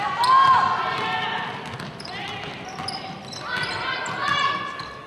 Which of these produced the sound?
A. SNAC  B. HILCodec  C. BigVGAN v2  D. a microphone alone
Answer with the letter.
D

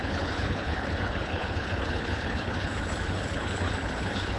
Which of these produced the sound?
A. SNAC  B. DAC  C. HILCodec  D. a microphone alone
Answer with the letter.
C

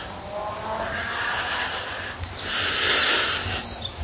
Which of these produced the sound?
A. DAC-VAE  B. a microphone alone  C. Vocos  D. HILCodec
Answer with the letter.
B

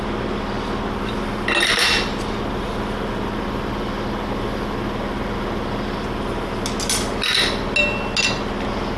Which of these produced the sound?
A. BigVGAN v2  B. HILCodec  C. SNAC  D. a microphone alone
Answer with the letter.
D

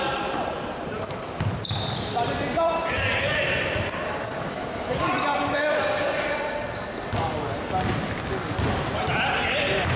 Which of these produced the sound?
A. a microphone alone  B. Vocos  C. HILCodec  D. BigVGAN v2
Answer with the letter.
A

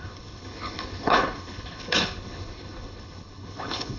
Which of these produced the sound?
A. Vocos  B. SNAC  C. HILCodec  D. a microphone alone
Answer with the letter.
C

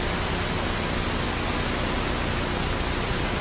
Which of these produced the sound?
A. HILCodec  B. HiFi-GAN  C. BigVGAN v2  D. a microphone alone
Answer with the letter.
D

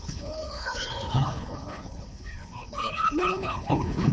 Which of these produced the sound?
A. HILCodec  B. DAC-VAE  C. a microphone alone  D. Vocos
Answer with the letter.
A